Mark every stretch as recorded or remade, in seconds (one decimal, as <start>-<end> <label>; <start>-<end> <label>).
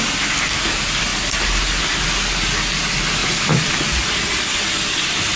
0.0-5.4 recorded